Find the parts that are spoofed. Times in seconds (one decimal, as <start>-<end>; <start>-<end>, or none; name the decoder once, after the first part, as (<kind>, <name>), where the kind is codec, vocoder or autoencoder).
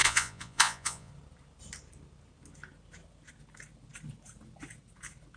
0.0-1.1 (vocoder, Vocos)